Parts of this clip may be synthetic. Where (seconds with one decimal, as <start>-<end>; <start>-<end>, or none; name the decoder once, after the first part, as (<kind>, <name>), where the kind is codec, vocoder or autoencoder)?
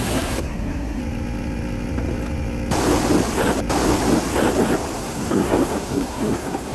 0.0-1.0 (codec, SNAC); 5.0-6.7